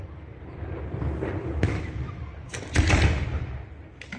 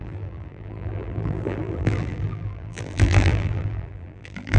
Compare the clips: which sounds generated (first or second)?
second